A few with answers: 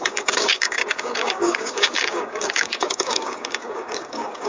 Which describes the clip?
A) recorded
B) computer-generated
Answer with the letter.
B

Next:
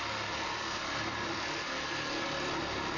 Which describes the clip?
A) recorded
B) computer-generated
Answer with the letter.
A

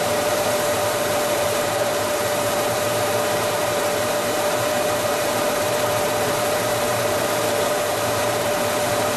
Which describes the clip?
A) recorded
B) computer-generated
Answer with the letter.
B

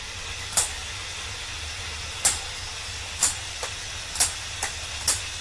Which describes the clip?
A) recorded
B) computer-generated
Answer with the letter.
A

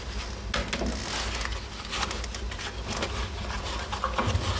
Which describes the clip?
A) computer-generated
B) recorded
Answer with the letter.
B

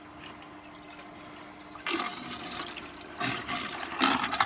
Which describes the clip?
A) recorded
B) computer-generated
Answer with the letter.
A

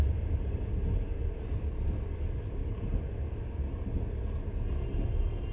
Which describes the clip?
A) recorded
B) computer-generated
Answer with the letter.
A